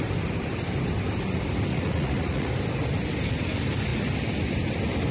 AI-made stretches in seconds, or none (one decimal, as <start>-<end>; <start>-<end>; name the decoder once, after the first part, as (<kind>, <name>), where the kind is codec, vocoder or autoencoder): 1.7-2.5 (vocoder, Vocos)